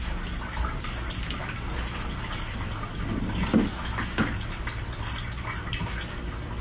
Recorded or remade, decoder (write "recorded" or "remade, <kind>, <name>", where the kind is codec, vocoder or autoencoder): recorded